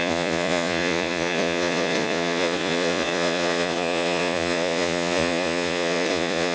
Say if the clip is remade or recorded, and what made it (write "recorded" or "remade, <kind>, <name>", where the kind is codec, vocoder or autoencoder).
remade, vocoder, Vocos